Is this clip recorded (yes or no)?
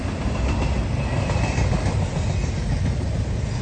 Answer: yes